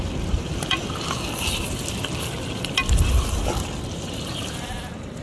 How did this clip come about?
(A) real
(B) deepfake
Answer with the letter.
A